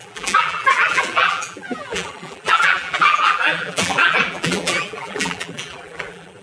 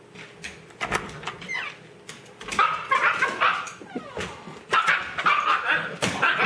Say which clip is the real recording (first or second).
second